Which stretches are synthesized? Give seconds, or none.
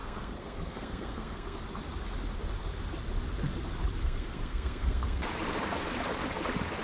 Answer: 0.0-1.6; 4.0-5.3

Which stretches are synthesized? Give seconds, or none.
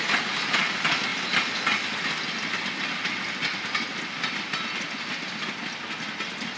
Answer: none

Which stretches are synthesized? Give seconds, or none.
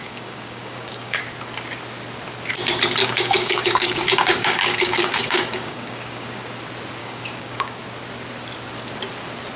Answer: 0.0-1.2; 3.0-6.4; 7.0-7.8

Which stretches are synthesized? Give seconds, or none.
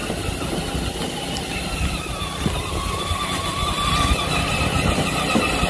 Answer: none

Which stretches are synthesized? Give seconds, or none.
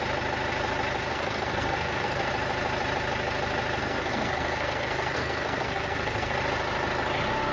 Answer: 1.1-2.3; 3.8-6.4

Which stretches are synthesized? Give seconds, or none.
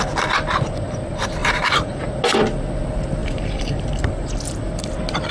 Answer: 1.4-2.1; 3.2-4.7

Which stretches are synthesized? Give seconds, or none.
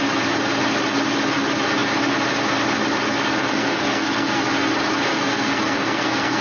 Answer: 3.4-4.4; 5.1-6.4